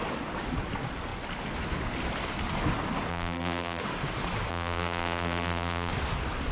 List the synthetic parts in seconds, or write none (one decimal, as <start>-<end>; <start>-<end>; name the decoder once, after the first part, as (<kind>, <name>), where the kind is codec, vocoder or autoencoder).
3.1-3.8 (vocoder, BigVGAN v2); 4.5-5.9